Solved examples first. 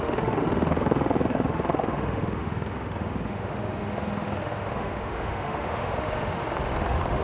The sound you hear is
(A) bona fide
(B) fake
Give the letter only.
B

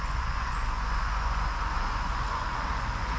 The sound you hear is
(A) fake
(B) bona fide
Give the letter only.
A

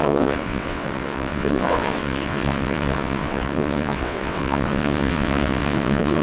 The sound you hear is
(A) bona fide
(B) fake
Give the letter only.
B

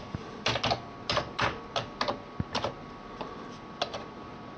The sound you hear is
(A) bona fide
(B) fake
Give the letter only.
A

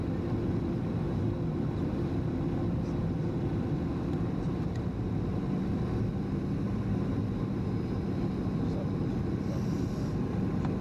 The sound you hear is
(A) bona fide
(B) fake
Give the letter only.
A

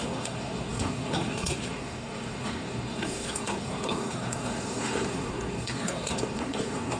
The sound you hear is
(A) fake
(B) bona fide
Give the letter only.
A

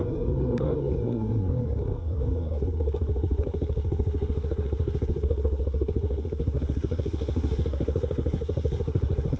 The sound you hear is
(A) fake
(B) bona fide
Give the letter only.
A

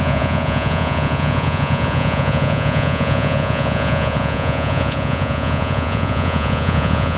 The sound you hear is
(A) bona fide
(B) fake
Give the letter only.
B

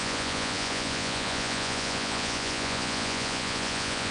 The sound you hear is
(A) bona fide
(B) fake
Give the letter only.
B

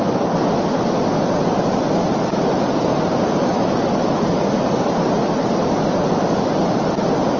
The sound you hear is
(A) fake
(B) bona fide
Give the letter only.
B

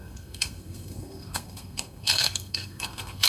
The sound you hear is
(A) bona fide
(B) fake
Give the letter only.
B